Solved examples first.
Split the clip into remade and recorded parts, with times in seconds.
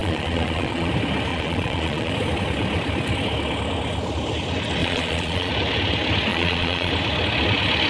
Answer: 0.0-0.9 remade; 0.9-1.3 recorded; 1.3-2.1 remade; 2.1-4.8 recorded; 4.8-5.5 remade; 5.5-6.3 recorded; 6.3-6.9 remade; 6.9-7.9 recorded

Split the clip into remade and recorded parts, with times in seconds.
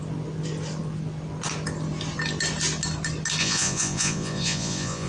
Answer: 0.0-3.4 recorded; 3.4-5.1 remade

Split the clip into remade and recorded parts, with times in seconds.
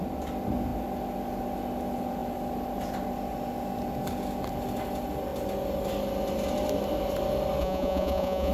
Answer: 0.0-7.6 recorded; 7.6-8.5 remade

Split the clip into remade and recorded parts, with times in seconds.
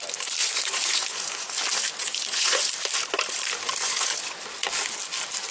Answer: 0.0-0.4 recorded; 0.4-1.5 remade; 1.5-2.0 recorded; 2.0-2.7 remade; 2.7-3.8 recorded; 3.8-4.4 remade; 4.4-5.5 recorded